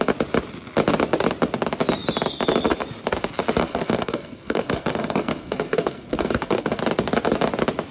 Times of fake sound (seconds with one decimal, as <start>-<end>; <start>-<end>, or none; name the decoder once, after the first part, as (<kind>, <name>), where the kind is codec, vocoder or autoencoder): 3.6-6.8 (codec, SNAC)